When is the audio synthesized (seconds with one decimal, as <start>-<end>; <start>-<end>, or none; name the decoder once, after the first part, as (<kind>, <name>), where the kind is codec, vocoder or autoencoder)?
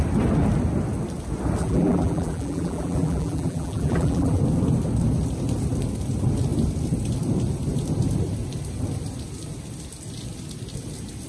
1.6-4.4 (vocoder, BigVGAN v2)